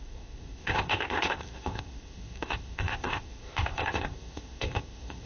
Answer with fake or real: fake